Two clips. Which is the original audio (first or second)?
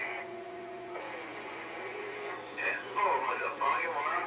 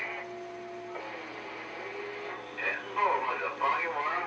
second